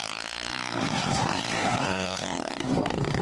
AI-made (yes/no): yes